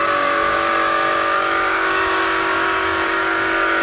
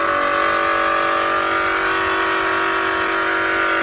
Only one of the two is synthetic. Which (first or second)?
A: first